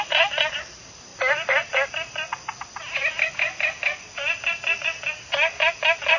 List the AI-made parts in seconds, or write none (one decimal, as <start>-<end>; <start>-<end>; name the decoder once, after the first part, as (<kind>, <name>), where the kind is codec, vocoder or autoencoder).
none